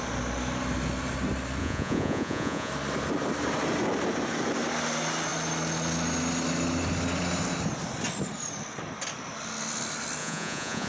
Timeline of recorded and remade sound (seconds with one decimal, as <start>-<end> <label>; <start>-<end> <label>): 0.0-1.6 recorded; 1.6-2.7 remade; 2.7-10.2 recorded; 10.2-10.9 remade